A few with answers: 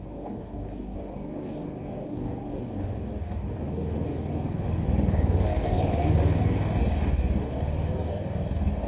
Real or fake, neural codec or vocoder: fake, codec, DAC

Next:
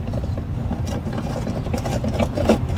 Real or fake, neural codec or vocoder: real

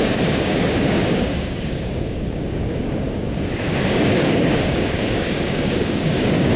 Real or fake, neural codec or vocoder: fake, codec, DAC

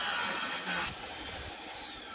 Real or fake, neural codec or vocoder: real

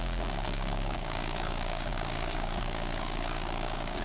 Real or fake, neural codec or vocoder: fake, codec, DAC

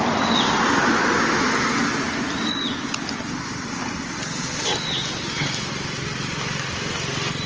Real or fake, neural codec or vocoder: real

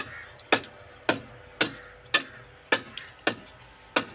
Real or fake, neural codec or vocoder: real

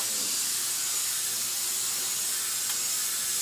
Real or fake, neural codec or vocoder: real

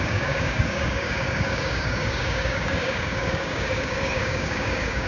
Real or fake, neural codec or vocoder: fake, codec, DAC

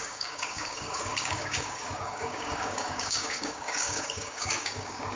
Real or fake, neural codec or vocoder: fake, codec, DAC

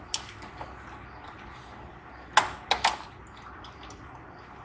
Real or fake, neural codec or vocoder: real